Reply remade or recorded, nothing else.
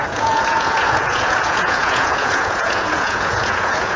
remade